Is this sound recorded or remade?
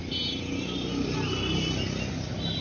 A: recorded